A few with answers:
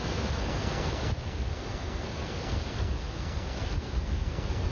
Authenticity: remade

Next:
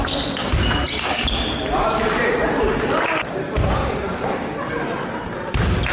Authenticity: recorded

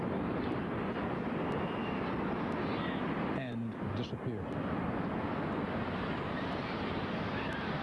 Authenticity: recorded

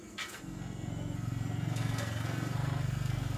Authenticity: remade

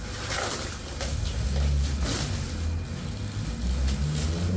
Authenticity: recorded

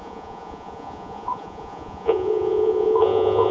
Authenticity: remade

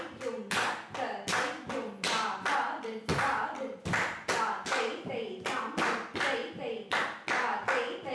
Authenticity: recorded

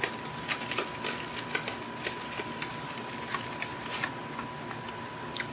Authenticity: recorded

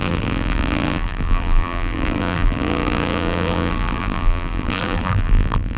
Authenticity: remade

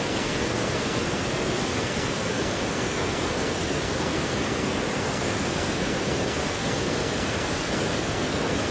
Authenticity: remade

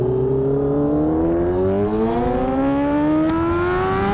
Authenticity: recorded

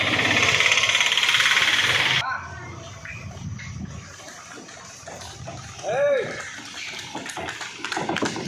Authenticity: recorded